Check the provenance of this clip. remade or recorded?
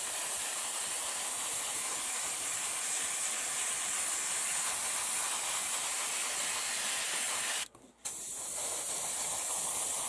recorded